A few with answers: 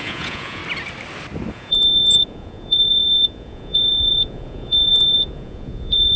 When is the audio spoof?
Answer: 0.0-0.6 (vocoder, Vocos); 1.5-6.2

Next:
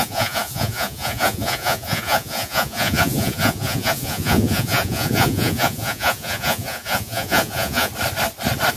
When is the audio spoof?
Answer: 0.0-7.9 (vocoder, Vocos)

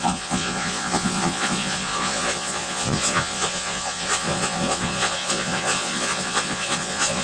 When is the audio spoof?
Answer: 0.0-7.2 (vocoder, Vocos)

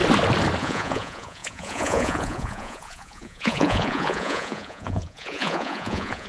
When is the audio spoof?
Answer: 0.6-6.3 (vocoder, Vocos)

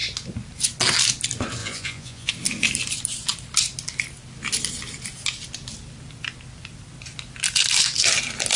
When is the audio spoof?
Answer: 1.6-2.3 (vocoder, Vocos)

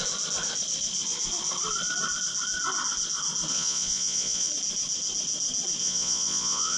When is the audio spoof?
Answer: 3.5-4.5 (vocoder, Vocos); 5.8-6.8

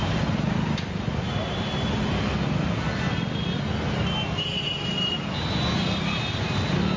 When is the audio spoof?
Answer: none